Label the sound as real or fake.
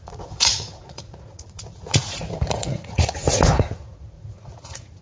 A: fake